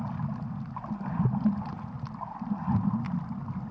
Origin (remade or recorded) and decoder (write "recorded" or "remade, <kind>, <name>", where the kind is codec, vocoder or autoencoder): recorded